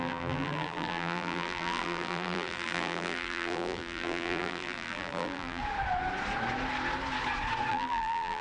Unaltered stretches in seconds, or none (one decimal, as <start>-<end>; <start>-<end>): 5.6-7.7